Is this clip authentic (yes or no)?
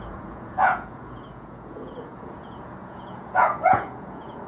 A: no